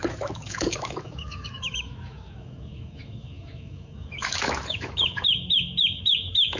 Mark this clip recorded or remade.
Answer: remade